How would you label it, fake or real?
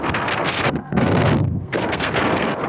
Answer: fake